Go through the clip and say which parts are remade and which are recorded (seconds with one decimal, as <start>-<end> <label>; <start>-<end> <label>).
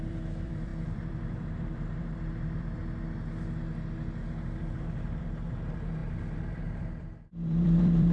0.0-2.8 remade; 2.8-4.6 recorded; 4.6-8.1 remade